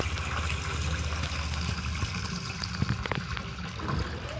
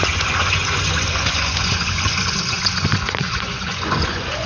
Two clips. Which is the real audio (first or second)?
first